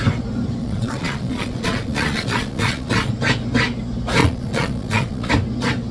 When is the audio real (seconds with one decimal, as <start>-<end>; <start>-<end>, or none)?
0.0-0.6; 3.1-4.2; 5.3-5.9